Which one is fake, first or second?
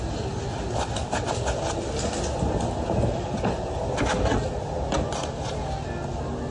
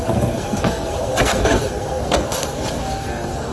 second